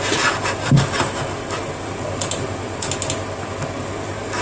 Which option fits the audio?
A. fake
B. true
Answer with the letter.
B